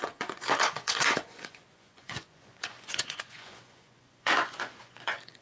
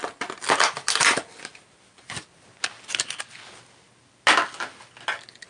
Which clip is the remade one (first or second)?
first